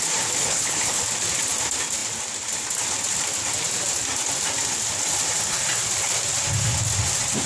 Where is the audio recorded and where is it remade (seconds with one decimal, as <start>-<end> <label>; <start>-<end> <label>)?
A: 0.0-0.4 recorded; 0.4-1.0 remade; 1.0-7.5 recorded